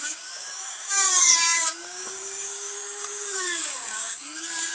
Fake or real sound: fake